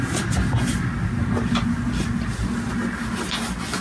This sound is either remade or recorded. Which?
recorded